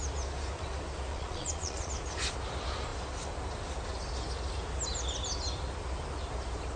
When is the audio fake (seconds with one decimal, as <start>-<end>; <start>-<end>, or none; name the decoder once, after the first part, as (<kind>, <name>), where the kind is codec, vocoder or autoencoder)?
1.1-1.9 (vocoder, Vocos)